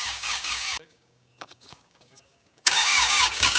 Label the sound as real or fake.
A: fake